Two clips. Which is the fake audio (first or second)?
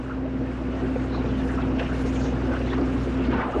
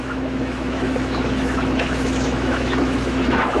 second